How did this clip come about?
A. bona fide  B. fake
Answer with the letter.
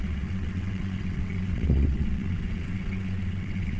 B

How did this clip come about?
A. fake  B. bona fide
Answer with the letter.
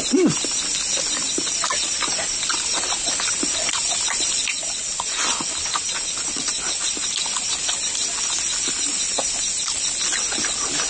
B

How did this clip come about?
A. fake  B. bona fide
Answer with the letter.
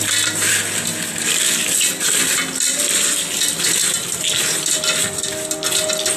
B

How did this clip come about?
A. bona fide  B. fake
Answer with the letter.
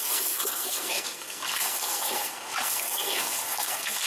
B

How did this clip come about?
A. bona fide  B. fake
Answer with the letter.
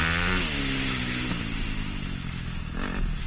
A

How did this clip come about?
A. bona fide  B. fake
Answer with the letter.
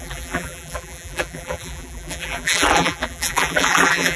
B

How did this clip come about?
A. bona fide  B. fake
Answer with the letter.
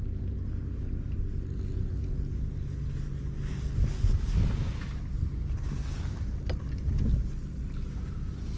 A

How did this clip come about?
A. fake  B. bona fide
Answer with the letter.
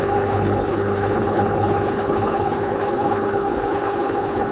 A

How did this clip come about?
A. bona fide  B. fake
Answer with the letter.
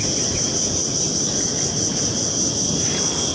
A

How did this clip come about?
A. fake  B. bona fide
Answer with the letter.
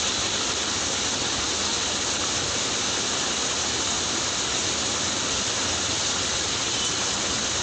B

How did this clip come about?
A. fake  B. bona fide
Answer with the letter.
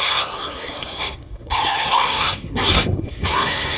A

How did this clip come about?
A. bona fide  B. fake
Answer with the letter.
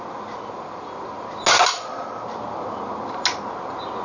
A